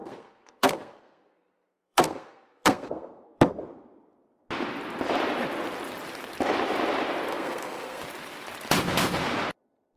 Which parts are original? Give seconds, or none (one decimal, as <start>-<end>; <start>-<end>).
3.6-7.3; 8.0-10.0